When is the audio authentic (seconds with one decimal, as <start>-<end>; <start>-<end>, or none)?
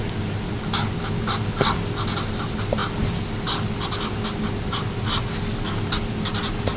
0.0-6.8